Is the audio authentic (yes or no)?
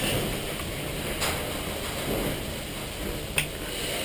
yes